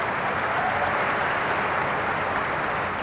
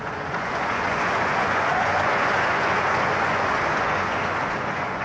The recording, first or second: first